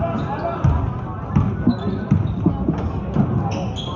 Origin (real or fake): real